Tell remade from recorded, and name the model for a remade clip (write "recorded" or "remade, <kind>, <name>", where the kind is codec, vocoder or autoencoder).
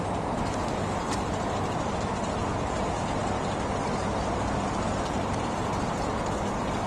recorded